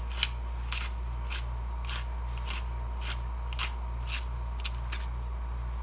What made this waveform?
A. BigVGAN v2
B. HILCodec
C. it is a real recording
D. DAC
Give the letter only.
C